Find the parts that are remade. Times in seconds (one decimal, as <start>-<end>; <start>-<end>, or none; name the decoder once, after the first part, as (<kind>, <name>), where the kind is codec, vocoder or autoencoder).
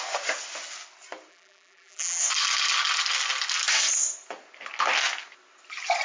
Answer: 1.3-2.2 (vocoder, BigVGAN v2)